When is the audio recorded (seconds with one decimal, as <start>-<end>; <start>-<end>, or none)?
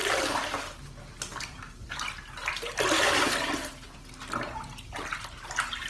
0.0-5.9